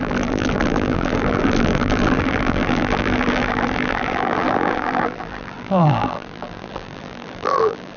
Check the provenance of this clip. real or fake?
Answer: fake